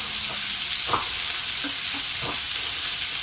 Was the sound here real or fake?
real